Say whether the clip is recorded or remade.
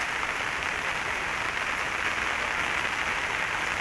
recorded